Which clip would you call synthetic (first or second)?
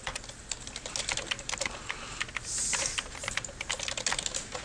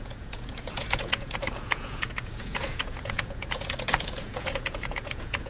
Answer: second